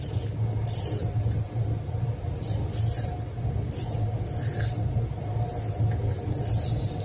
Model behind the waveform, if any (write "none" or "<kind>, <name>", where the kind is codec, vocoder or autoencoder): none